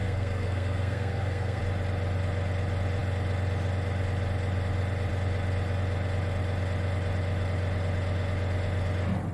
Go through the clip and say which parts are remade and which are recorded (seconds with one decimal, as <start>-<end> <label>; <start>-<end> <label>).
0.0-1.6 remade; 1.6-9.3 recorded

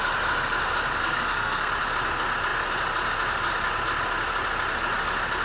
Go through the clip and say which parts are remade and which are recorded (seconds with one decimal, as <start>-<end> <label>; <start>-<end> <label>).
0.0-1.0 recorded; 1.0-1.7 remade; 1.7-5.4 recorded